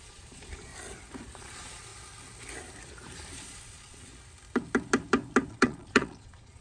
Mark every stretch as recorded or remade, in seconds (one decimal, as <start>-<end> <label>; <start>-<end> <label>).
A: 0.0-0.7 remade; 0.7-1.3 recorded; 1.3-1.9 remade; 1.9-3.4 recorded; 3.4-4.1 remade; 4.1-5.5 recorded; 5.5-6.6 remade